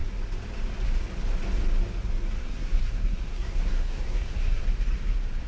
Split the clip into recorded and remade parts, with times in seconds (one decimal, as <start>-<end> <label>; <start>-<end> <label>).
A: 0.0-2.4 recorded; 2.4-4.6 remade; 4.6-5.5 recorded